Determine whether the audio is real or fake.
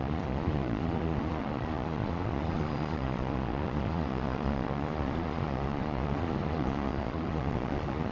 fake